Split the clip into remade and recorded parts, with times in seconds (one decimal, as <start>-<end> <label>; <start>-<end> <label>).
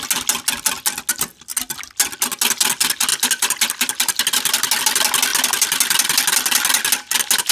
0.0-7.5 recorded